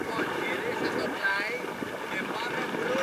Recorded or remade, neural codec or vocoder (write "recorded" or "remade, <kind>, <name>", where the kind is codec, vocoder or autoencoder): recorded